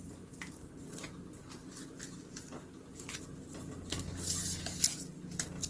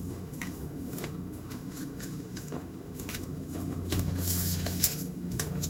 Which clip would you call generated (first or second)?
second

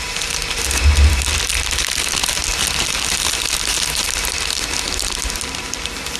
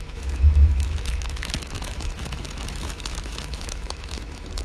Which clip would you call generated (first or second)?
second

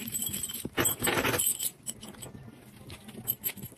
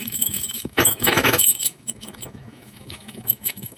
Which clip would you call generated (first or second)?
second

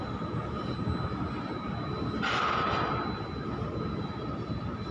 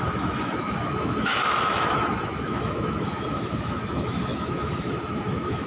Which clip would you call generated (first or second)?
second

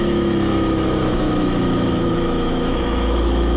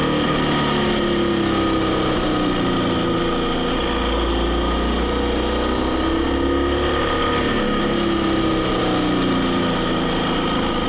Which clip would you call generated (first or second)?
first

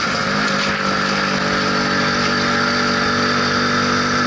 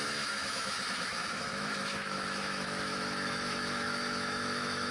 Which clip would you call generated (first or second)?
second